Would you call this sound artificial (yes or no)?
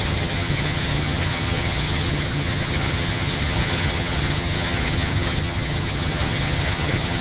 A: yes